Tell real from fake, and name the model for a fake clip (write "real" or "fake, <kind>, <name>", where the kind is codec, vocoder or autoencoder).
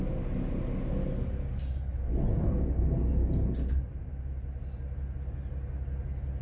real